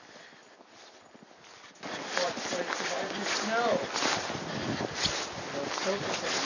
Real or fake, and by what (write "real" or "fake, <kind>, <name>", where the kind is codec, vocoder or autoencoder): real